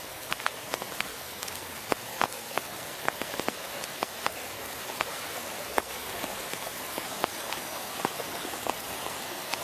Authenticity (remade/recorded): remade